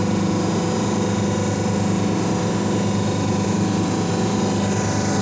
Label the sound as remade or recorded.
recorded